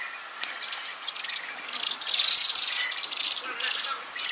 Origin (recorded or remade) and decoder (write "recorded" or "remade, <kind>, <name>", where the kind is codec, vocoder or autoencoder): recorded